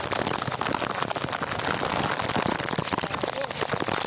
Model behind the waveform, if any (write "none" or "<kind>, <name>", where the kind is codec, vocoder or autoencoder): none